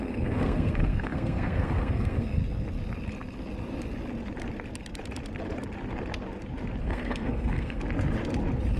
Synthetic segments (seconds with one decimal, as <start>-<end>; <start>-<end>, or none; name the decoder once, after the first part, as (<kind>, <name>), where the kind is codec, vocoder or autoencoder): 0.0-2.4 (codec, SNAC); 6.8-7.8